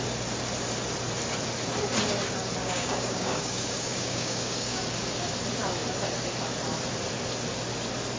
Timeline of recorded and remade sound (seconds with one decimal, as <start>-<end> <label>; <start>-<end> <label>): 0.0-2.6 recorded; 2.6-4.8 remade; 4.8-8.2 recorded